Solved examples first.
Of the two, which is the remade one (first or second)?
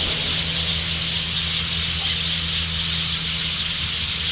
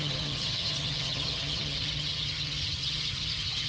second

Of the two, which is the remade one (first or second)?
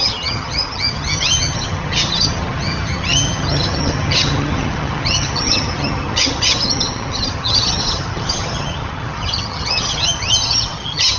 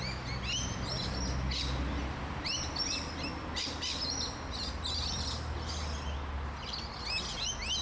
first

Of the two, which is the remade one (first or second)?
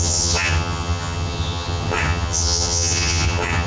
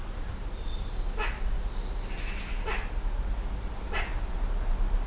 first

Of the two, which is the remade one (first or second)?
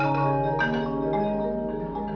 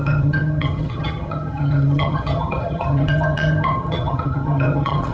second